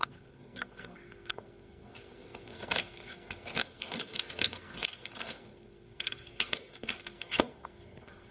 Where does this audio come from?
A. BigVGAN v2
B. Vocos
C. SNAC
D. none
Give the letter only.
C